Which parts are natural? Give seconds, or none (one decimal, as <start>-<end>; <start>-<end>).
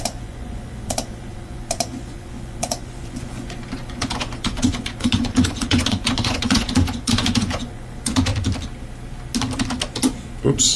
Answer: 8.3-10.8